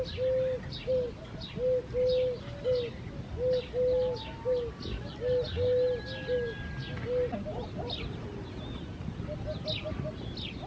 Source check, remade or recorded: recorded